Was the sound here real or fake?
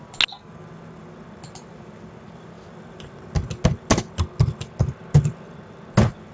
real